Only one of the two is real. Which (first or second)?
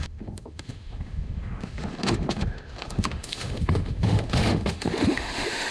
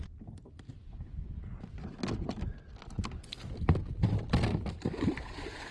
second